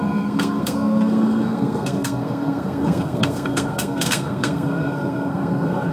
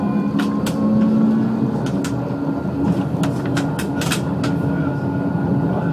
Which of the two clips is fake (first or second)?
first